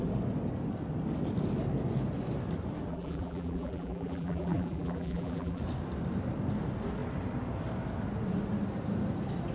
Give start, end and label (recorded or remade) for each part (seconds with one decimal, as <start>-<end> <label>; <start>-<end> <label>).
0.0-2.9 recorded; 2.9-5.6 remade; 5.6-9.5 recorded